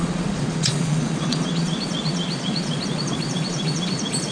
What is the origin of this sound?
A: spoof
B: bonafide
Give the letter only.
A